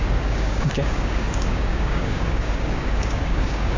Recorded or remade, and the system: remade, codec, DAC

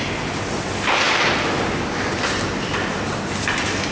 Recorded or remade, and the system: recorded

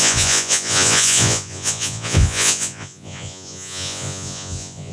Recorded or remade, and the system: remade, vocoder, Vocos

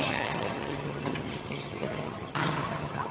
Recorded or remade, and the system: remade, vocoder, HiFi-GAN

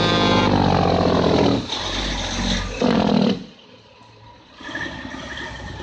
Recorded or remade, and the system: recorded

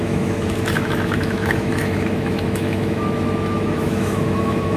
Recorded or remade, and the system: remade, autoencoder, DAC-VAE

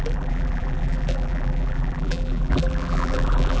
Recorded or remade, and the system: remade, vocoder, BigVGAN v2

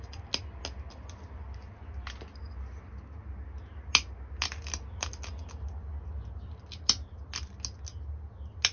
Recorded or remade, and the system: recorded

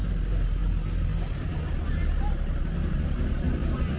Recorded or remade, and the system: recorded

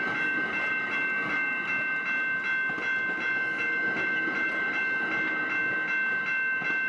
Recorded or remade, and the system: recorded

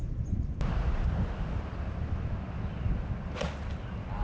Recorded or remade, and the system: recorded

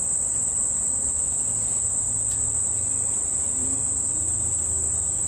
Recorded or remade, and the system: recorded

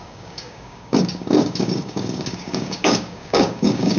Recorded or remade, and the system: remade, codec, DAC